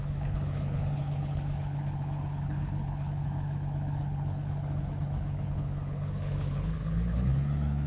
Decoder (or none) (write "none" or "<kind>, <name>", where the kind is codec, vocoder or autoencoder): codec, HILCodec